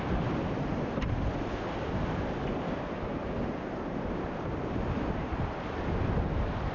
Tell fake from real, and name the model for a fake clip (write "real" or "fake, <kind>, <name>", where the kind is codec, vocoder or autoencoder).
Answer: real